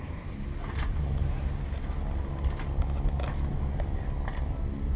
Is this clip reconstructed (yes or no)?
no